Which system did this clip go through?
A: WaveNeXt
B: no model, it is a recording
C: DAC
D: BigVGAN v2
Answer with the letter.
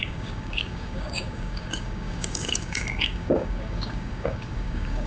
C